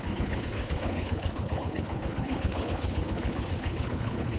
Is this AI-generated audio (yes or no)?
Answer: yes